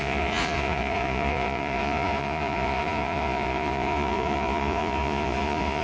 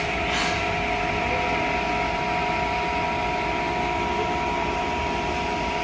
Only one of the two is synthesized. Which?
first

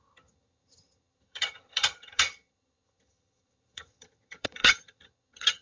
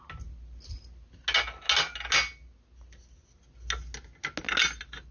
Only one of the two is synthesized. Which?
first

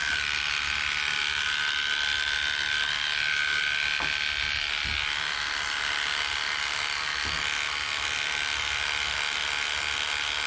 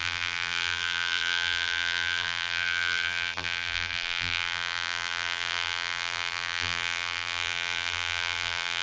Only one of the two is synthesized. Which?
second